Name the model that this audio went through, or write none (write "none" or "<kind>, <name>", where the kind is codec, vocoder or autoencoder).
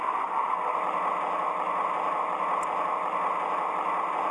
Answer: none